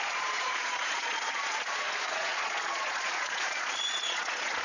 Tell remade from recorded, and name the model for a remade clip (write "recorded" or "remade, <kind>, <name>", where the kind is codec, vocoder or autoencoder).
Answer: remade, vocoder, Vocos